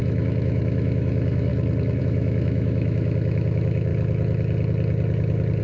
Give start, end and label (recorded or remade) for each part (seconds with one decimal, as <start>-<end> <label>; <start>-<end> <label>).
0.0-1.5 remade; 1.5-2.0 recorded; 2.0-3.9 remade; 3.9-5.6 recorded